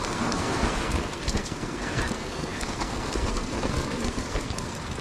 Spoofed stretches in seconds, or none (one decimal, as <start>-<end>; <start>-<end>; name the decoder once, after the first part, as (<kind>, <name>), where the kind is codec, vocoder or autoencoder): 0.0-5.0 (codec, SNAC)